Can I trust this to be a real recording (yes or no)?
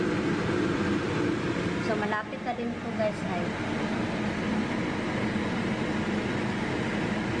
yes